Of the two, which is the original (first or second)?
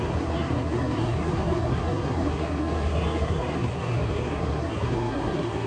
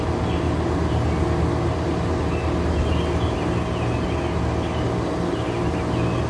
second